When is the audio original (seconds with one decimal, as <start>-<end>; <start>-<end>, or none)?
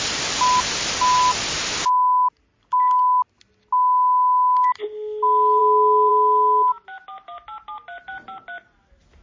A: 0.0-9.2